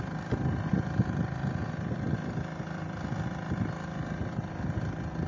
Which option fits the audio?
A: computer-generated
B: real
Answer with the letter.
B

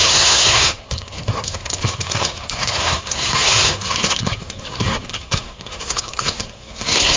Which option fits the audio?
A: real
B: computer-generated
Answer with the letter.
B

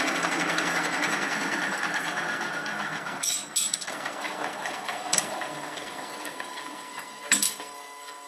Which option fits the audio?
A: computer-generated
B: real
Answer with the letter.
A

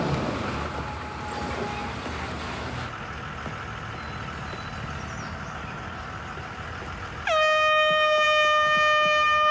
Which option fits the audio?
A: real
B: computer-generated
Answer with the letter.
A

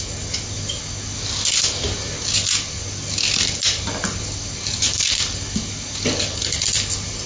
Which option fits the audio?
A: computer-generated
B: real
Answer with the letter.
B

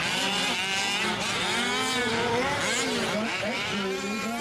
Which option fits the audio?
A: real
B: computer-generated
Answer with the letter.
A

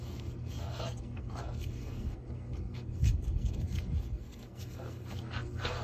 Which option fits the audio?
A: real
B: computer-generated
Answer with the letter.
B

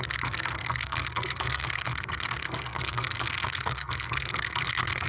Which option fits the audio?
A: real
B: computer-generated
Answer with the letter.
B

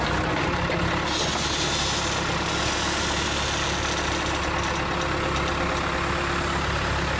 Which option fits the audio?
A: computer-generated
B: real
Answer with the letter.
B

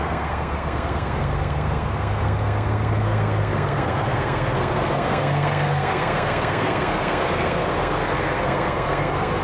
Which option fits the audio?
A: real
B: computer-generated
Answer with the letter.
B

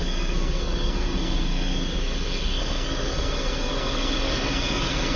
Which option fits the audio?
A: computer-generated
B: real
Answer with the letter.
A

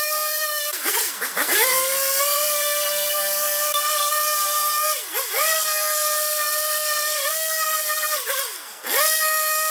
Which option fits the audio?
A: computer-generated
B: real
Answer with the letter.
A